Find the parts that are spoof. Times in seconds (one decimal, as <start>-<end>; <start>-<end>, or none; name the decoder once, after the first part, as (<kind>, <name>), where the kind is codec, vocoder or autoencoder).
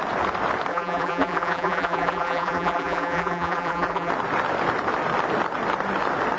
0.7-4.1 (vocoder, BigVGAN v2)